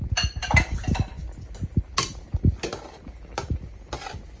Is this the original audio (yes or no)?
yes